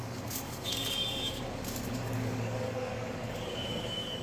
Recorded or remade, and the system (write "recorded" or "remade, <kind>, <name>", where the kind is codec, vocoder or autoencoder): remade, codec, DAC